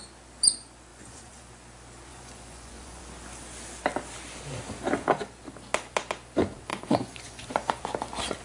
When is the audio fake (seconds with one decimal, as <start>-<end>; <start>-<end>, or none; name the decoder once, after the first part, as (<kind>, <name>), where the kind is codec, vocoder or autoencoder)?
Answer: 0.9-1.5 (vocoder, Vocos); 2.1-3.0; 6.7-7.8